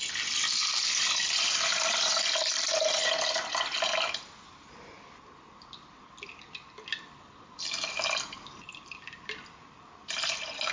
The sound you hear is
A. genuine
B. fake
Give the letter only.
A